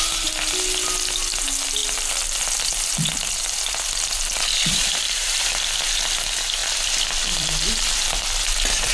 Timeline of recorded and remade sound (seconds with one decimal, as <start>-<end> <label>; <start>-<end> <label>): 0.0-1.8 recorded; 1.8-5.4 remade; 5.4-6.6 recorded; 6.6-8.4 remade; 8.4-8.9 recorded